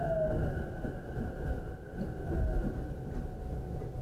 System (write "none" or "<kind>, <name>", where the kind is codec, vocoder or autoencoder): none